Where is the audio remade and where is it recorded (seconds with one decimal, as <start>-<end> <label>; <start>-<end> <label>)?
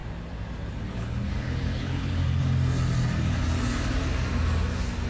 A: 0.0-0.7 recorded; 0.7-2.2 remade; 2.2-5.1 recorded